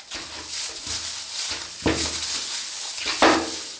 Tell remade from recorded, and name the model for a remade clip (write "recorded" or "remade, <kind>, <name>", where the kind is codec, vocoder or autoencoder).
recorded